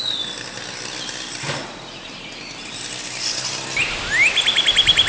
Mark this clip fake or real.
real